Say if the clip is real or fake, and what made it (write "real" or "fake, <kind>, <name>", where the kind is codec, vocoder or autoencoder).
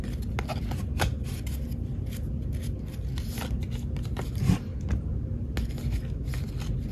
real